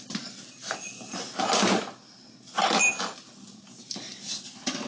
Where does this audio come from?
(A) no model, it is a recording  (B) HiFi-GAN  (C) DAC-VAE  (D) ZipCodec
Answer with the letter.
A